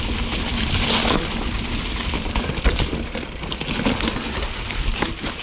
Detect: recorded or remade recorded